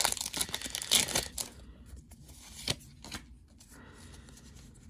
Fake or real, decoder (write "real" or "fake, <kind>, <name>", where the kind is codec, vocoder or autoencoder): real